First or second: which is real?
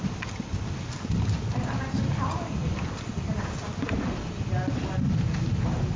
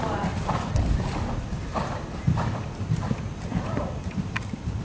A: first